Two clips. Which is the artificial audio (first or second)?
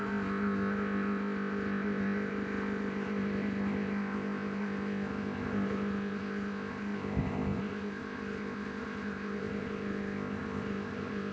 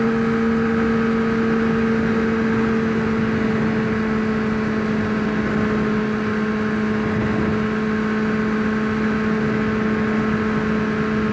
first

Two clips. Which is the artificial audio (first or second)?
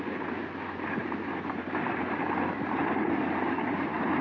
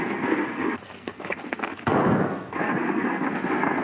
second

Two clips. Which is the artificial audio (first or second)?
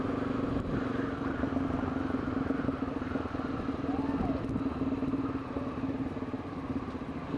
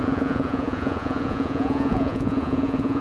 second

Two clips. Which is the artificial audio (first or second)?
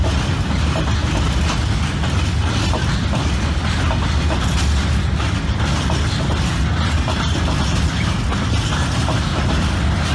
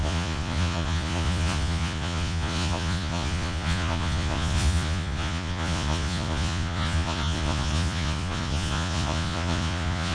second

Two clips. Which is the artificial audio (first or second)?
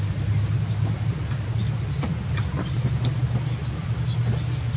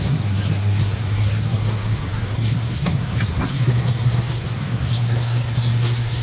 second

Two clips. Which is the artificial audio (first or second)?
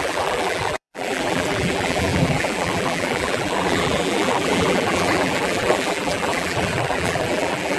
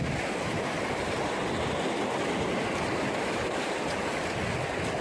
first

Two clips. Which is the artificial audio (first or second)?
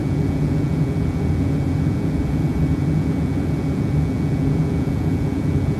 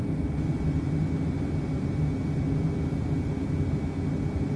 first